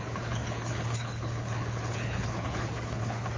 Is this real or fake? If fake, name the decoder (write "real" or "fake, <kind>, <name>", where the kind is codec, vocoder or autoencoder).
fake, codec, HILCodec